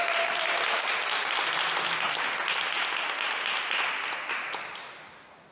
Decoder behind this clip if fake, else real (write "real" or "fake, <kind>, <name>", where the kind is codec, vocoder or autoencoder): real